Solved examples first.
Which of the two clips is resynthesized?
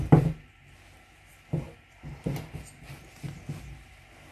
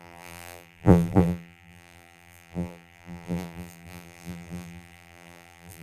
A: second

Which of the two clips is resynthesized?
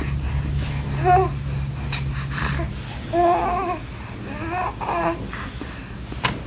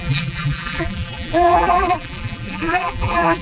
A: second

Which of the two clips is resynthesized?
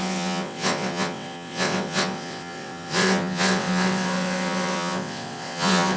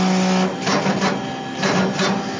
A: first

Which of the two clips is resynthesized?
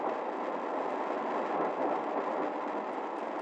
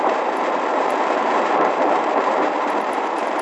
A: second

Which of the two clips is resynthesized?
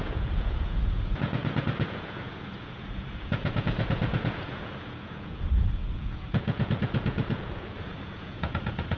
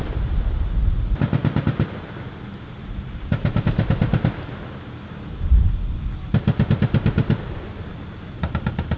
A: first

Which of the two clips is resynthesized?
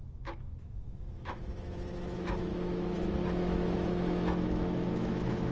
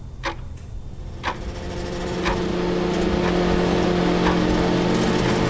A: first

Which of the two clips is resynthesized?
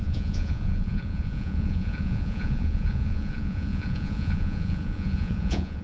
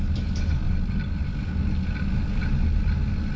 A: first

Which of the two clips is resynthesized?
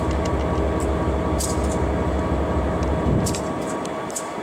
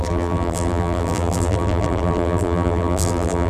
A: second